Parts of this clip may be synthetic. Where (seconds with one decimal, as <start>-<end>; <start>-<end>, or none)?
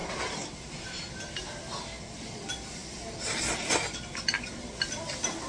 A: none